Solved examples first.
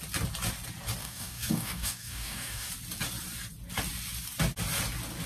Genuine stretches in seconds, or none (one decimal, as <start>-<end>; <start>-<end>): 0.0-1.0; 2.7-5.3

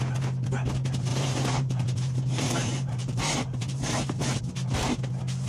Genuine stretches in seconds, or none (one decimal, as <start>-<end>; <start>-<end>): 0.0-1.1; 4.4-5.5

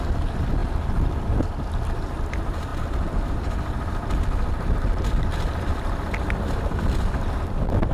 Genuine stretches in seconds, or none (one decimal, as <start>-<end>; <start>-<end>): 0.6-1.3

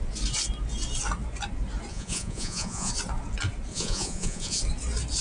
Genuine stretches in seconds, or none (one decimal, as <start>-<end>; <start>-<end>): 0.0-1.9; 2.9-3.7; 4.6-5.2